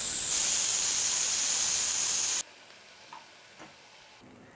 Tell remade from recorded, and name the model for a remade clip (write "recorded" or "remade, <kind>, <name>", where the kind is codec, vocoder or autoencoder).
recorded